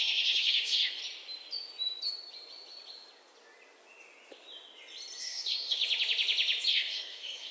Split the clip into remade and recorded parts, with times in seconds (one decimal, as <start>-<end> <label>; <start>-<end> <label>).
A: 0.0-1.0 remade; 1.0-5.2 recorded; 5.2-5.8 remade; 5.8-6.7 recorded; 6.7-7.5 remade